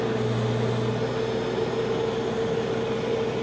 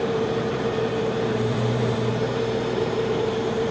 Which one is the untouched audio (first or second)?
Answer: first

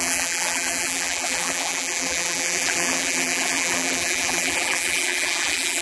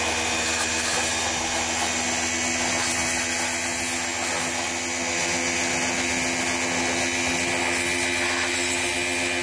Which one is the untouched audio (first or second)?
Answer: second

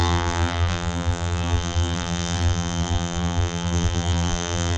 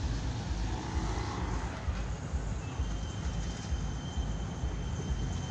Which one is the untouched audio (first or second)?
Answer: second